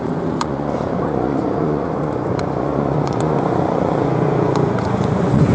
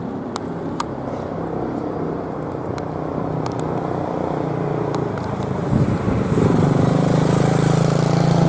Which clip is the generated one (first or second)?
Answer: first